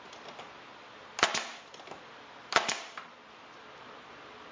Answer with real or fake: real